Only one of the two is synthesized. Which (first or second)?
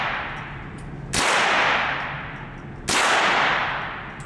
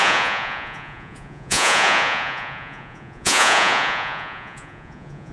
second